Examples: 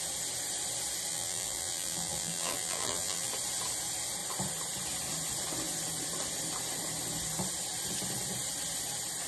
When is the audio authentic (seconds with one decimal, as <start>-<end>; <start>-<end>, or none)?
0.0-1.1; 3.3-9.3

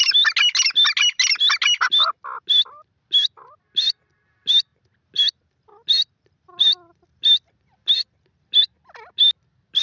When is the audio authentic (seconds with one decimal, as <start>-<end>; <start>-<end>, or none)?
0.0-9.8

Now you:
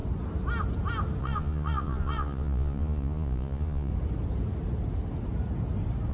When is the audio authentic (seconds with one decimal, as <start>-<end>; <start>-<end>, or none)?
0.0-1.2; 3.9-6.1

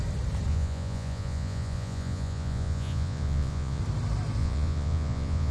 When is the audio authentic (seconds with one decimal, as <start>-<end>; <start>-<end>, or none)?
0.0-0.5; 3.8-4.4